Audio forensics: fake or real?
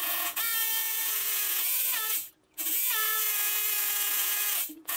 fake